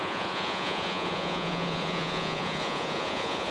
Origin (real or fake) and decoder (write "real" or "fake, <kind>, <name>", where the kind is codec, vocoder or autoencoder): fake, vocoder, Vocos